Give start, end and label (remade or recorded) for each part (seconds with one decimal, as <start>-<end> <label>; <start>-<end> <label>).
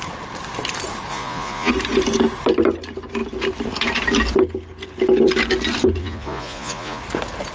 0.0-1.1 recorded; 1.1-1.7 remade; 1.7-6.0 recorded; 6.0-7.0 remade; 7.0-7.5 recorded